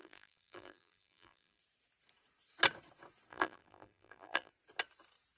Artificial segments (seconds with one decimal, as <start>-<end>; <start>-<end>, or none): 0.0-1.6; 3.3-4.5